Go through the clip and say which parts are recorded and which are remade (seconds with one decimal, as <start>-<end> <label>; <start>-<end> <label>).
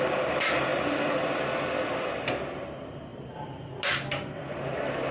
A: 0.0-5.1 recorded